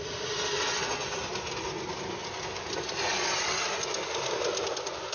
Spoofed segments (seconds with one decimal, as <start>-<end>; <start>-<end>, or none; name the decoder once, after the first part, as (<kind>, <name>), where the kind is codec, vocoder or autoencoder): none